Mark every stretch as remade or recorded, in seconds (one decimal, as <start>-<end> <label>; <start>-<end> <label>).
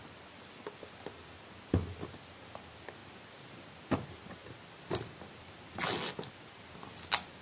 0.0-7.4 recorded